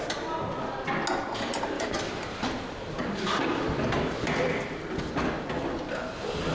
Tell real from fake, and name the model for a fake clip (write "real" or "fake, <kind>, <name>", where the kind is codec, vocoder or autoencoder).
real